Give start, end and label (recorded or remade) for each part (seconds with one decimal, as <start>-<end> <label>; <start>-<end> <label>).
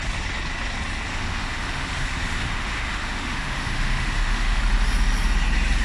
0.0-1.1 recorded; 1.1-4.6 remade; 4.6-5.8 recorded